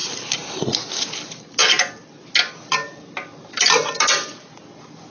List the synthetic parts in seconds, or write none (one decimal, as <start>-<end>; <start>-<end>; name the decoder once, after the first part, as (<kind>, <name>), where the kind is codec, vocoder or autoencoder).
none